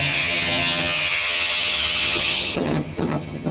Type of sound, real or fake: fake